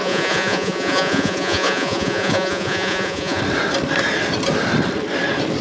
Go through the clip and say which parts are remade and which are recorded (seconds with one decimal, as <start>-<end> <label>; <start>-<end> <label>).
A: 0.0-3.4 remade; 3.4-5.6 recorded